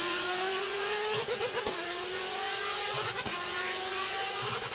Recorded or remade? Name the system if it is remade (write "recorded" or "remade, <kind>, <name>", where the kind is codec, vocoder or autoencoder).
remade, vocoder, Vocos